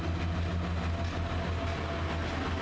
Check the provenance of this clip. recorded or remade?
recorded